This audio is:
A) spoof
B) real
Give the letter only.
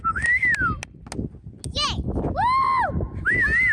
B